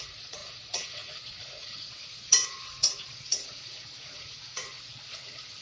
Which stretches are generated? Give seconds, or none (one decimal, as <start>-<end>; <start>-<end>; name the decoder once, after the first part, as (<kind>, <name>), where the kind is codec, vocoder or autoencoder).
0.0-4.7 (vocoder, Vocos)